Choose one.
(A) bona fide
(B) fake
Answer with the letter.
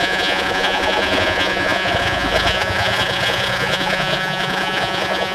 B